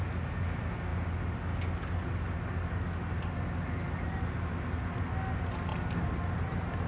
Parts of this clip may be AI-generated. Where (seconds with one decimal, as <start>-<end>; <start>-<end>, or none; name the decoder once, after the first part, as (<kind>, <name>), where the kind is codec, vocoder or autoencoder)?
none